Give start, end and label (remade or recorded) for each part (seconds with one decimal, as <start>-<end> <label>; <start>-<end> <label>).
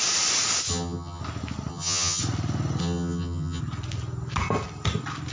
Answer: 0.0-0.7 recorded; 0.7-1.2 remade; 1.2-1.7 recorded; 1.7-2.2 remade; 2.2-2.8 recorded; 2.8-3.6 remade; 3.6-5.3 recorded